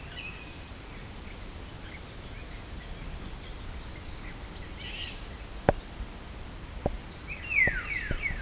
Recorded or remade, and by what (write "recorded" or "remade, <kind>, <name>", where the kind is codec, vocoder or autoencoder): recorded